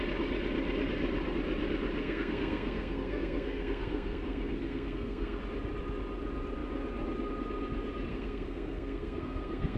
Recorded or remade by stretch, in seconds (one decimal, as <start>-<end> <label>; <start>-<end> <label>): 0.0-2.0 recorded; 2.0-5.4 remade; 5.4-8.1 recorded; 8.1-9.8 remade